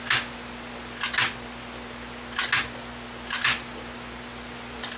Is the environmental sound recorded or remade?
recorded